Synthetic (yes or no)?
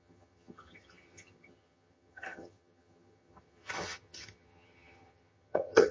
yes